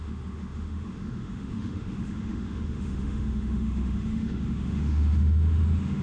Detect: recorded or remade remade